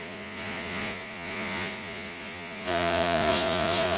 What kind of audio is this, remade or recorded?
remade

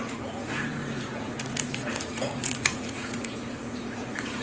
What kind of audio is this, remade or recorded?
remade